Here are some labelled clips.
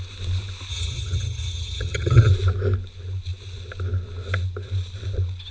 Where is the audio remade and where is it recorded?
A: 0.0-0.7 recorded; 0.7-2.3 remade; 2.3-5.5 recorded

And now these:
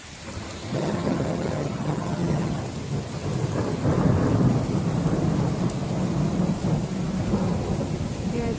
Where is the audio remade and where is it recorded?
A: 0.0-0.7 recorded; 0.7-2.6 remade; 2.6-8.6 recorded

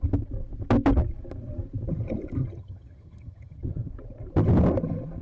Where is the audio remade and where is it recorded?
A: 0.0-2.4 recorded; 2.4-3.9 remade; 3.9-5.2 recorded

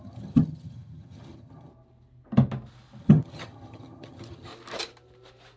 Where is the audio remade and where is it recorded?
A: 0.0-1.7 remade; 1.7-3.0 recorded; 3.0-4.5 remade; 4.5-5.6 recorded

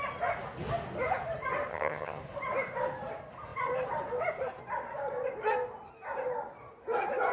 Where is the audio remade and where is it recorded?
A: 0.0-1.7 recorded; 1.7-2.2 remade; 2.2-7.3 recorded